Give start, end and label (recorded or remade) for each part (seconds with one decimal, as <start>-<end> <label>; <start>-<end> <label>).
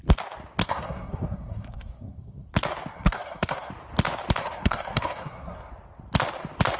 0.0-0.6 recorded; 0.6-2.5 remade; 2.5-2.9 recorded; 2.9-3.7 remade; 3.7-4.4 recorded; 4.4-5.7 remade; 5.7-6.8 recorded